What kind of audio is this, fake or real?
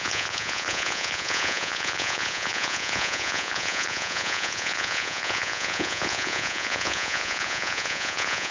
fake